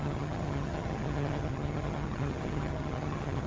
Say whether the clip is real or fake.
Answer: fake